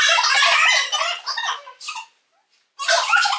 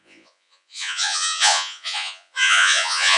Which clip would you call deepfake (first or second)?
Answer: second